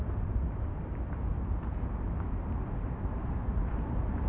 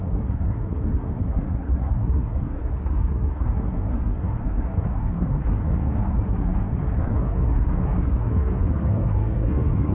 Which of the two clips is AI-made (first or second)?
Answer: second